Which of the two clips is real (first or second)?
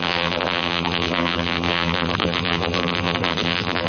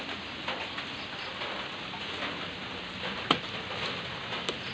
second